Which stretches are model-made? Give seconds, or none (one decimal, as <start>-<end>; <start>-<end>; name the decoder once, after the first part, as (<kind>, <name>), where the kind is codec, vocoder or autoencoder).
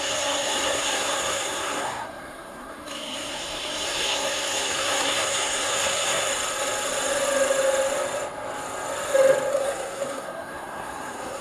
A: 0.0-6.3 (codec, SNAC); 9.5-11.4